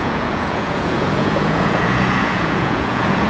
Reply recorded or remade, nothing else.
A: remade